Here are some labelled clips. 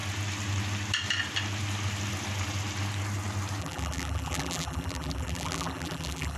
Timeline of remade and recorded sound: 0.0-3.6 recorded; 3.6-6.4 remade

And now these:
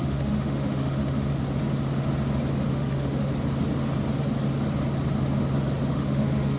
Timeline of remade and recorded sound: 0.0-1.3 remade; 1.3-2.7 recorded; 2.7-3.3 remade; 3.3-5.9 recorded; 5.9-6.6 remade

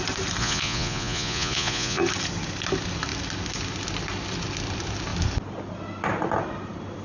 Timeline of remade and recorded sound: 0.0-0.4 recorded; 0.4-2.0 remade; 2.0-7.0 recorded